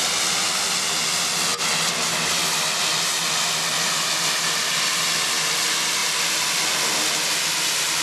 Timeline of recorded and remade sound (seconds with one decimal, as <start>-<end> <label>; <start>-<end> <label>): 0.0-8.0 recorded